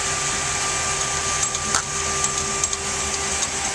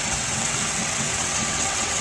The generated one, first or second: second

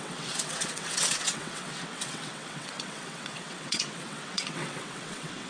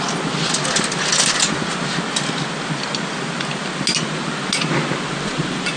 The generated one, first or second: first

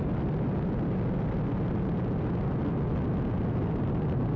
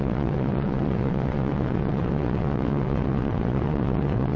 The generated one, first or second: second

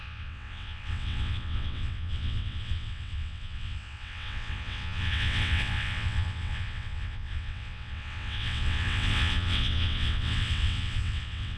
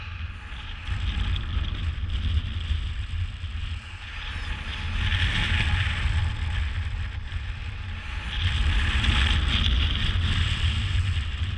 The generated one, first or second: first